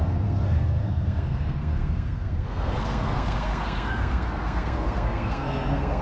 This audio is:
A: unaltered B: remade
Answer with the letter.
B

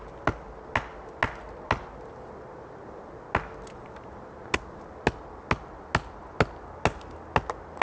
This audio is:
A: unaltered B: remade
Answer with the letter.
A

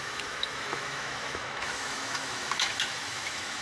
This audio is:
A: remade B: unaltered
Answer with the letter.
A